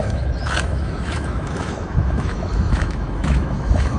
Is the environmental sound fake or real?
fake